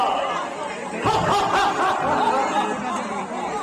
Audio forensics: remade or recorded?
recorded